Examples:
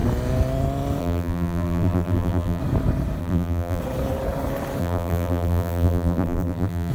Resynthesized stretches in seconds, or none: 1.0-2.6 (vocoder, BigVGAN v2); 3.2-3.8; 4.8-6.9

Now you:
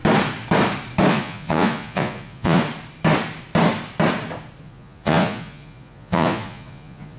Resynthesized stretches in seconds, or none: 1.1-2.6 (vocoder, Vocos); 4.6-7.2

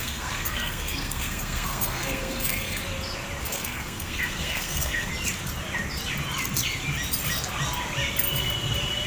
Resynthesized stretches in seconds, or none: 0.0-2.8 (codec, SNAC); 3.4-5.1

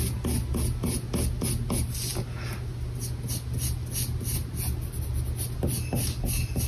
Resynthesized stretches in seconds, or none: none

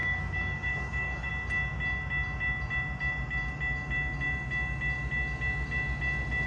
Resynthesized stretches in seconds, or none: 0.0-1.3 (codec, DAC)